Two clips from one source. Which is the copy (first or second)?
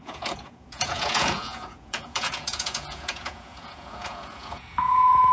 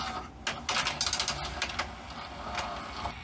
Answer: first